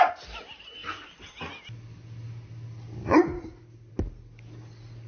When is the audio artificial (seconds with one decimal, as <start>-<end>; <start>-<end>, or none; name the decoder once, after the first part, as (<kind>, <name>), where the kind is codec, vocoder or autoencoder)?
none